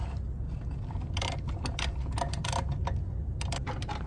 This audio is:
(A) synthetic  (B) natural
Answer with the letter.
B